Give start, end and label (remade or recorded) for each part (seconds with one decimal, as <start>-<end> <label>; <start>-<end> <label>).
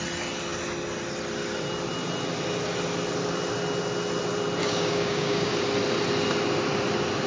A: 0.0-4.6 recorded; 4.6-5.5 remade; 5.5-7.3 recorded